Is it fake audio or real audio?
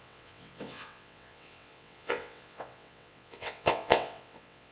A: fake